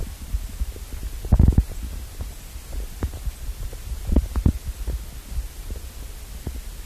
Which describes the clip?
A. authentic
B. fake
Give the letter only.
A